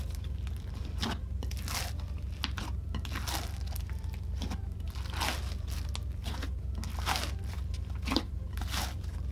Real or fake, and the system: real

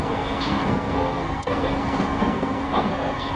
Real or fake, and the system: fake, codec, SNAC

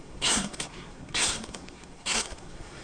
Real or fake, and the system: fake, codec, SNAC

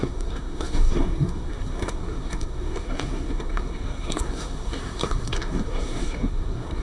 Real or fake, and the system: fake, codec, SNAC